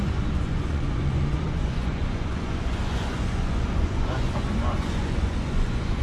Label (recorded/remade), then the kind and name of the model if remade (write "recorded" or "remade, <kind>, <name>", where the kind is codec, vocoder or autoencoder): remade, vocoder, Vocos